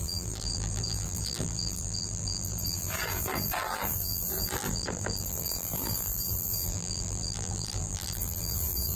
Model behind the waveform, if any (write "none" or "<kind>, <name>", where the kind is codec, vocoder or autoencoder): vocoder, BigVGAN v2